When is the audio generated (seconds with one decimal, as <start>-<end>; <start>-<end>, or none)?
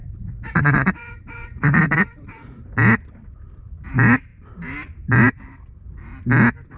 0.0-2.6